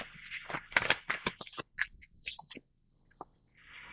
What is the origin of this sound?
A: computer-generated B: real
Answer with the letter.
B